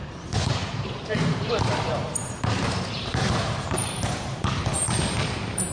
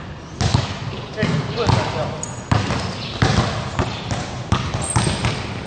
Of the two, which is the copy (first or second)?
first